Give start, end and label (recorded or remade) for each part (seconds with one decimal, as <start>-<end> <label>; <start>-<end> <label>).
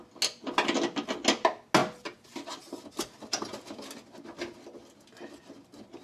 0.0-6.0 recorded